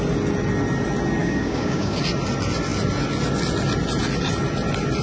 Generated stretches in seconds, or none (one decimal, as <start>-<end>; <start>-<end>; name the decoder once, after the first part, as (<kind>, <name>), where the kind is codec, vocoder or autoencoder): 1.2-2.0 (codec, DAC)